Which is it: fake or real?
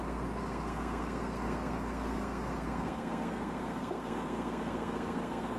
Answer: fake